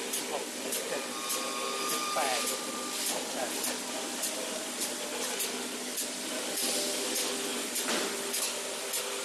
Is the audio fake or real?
real